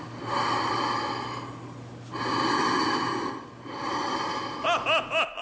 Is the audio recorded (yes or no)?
yes